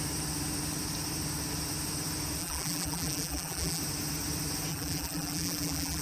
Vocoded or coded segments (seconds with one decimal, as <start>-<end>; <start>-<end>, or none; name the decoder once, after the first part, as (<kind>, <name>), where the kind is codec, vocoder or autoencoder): 2.4-3.8 (vocoder, BigVGAN v2); 4.7-6.0